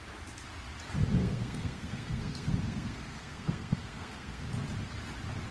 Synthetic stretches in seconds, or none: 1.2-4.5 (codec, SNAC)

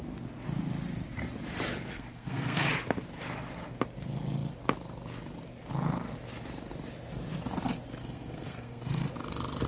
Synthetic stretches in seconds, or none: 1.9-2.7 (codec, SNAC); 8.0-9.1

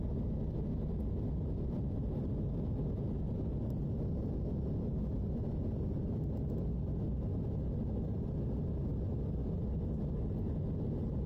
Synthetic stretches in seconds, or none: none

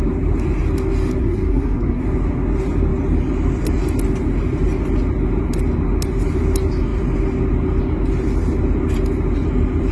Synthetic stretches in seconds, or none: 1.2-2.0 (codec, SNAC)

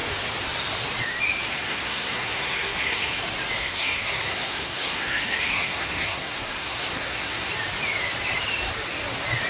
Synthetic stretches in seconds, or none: 1.5-3.2 (codec, SNAC); 3.6-7.5

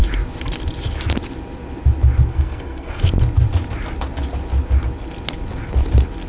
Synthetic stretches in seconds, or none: 2.3-3.0 (codec, SNAC)